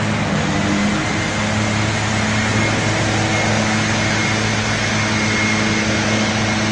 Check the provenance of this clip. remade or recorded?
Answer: recorded